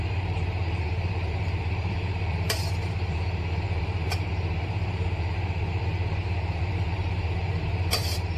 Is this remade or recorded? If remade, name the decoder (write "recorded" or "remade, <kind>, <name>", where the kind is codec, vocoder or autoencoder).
remade, vocoder, BigVGAN v2